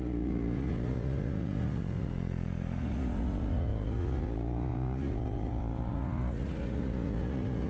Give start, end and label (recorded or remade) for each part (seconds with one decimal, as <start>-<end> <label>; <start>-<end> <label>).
0.0-7.7 remade